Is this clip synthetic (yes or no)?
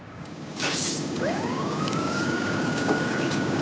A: yes